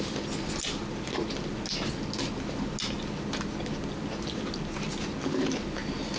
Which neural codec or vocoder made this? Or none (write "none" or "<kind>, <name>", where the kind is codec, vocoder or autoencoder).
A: none